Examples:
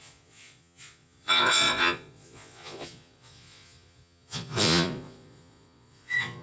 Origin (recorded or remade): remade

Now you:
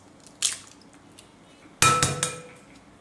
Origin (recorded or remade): recorded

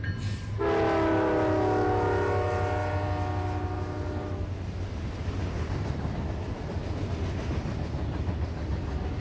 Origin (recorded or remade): recorded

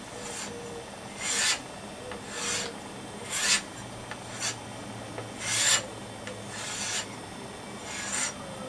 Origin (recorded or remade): recorded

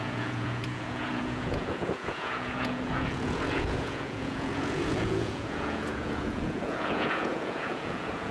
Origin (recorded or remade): remade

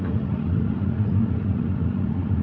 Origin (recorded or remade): remade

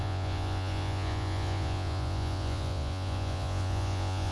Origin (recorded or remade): remade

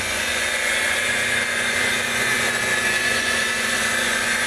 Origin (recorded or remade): remade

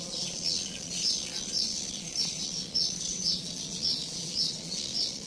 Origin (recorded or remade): remade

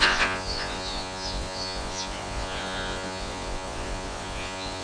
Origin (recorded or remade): remade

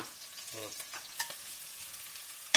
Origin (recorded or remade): remade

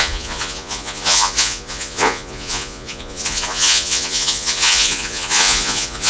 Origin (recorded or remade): remade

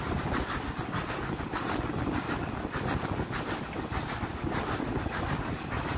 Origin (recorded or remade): recorded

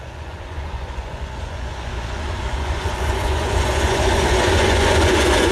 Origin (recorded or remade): remade